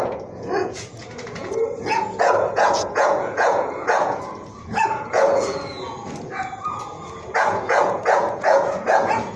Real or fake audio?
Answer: fake